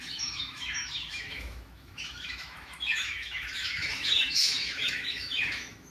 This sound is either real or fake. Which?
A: fake